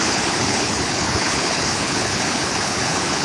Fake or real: fake